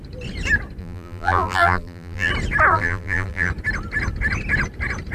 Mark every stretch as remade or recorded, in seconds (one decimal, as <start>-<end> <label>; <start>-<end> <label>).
0.0-0.8 recorded; 0.8-2.3 remade; 2.3-2.7 recorded; 2.7-3.5 remade; 3.5-5.1 recorded